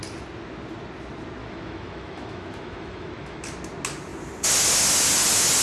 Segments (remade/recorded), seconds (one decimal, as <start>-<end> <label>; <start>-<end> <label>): 0.0-1.4 recorded; 1.4-3.4 remade; 3.4-5.6 recorded